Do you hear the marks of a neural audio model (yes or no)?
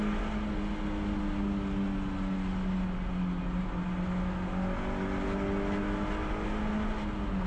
no